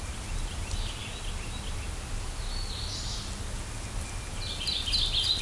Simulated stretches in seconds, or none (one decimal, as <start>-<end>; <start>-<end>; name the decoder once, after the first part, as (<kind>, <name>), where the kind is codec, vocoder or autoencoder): none